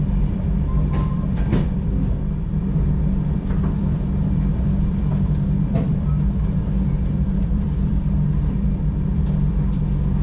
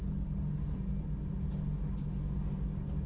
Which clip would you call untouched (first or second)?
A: second